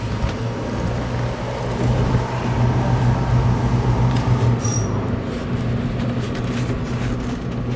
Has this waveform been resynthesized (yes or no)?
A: no